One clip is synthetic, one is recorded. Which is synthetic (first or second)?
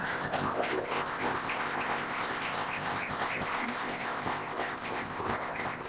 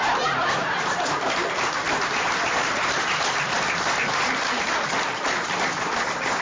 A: first